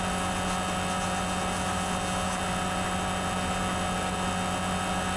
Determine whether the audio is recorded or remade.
recorded